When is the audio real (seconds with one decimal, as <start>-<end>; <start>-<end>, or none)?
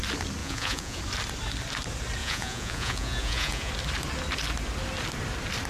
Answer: 0.0-0.4; 1.0-2.2; 3.7-5.7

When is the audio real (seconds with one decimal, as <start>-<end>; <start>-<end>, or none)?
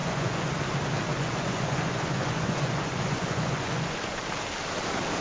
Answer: 0.5-1.1; 4.2-5.2